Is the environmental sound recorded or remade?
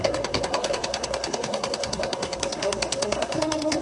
remade